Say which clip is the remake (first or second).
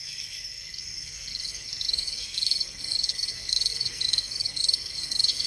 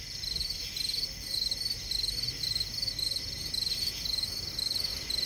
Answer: first